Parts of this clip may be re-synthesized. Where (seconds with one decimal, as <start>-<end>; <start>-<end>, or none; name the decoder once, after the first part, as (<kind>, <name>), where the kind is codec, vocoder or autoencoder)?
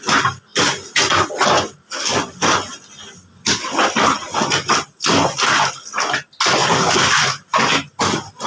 none